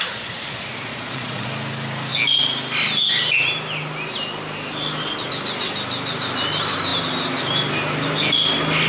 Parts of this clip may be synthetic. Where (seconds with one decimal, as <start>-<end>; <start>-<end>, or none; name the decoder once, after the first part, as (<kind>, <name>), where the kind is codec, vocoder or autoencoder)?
0.9-1.5 (vocoder, Vocos)